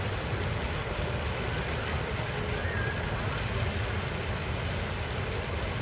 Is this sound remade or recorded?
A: recorded